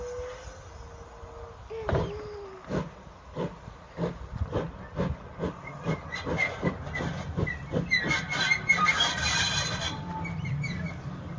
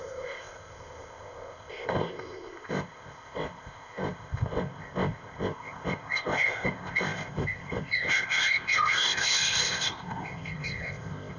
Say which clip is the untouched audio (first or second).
first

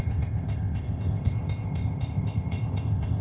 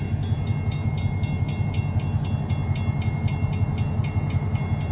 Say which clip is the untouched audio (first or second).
second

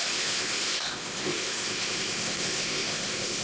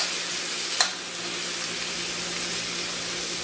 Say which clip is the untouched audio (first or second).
second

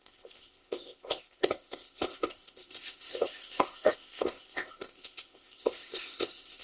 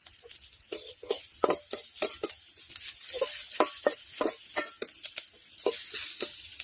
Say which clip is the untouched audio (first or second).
second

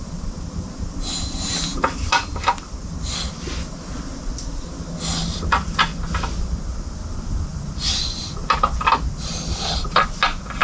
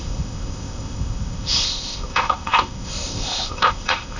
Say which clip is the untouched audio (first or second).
first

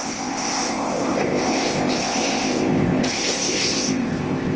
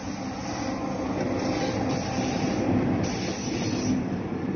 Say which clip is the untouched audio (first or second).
second